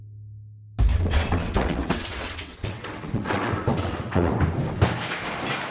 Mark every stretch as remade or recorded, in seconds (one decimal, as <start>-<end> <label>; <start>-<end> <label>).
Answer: 0.0-0.9 recorded; 0.9-4.3 remade; 4.3-5.7 recorded